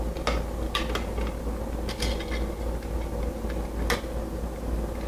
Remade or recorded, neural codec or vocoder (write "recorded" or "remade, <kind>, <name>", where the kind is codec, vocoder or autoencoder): recorded